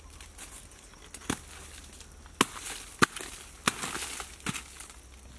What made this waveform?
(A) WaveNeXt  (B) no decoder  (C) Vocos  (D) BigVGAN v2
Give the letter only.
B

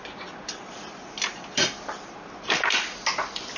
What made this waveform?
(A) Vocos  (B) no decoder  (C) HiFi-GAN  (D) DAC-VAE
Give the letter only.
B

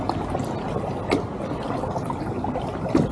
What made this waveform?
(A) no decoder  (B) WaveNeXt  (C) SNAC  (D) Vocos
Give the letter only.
A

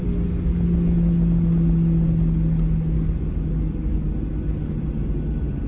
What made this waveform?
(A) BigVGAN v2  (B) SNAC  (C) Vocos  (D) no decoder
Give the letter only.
D